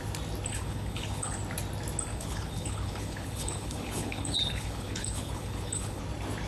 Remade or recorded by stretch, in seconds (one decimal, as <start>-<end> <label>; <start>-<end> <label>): 0.0-0.5 recorded; 0.5-1.4 remade; 1.4-2.1 recorded; 2.1-6.0 remade; 6.0-6.5 recorded